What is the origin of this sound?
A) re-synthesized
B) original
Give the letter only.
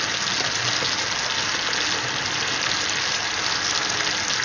B